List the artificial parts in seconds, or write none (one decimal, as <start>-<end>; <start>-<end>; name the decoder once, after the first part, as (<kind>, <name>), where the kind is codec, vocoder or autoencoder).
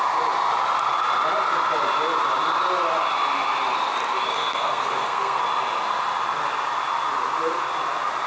4.3-5.4 (codec, SNAC)